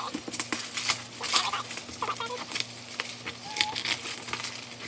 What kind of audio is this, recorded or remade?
recorded